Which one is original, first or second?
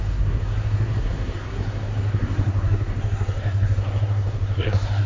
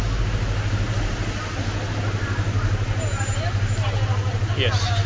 second